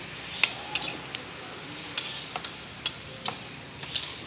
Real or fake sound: real